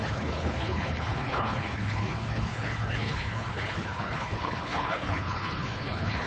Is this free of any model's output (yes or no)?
no